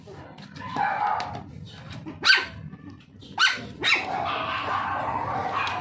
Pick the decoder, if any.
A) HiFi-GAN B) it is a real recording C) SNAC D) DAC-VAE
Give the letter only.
B